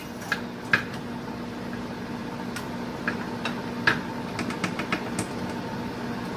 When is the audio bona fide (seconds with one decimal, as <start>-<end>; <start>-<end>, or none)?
0.0-6.4